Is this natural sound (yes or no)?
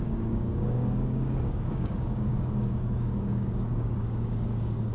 no